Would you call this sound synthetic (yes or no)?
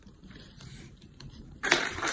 yes